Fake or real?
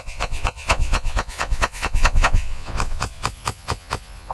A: fake